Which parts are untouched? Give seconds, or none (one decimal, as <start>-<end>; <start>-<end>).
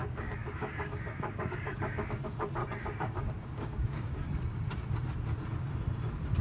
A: 2.0-2.6; 4.7-6.4